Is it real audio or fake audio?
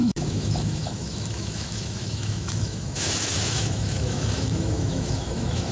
fake